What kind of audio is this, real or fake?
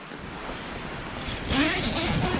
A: real